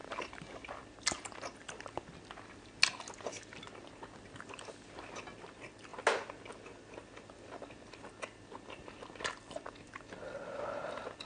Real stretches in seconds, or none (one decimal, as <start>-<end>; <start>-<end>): 0.0-11.3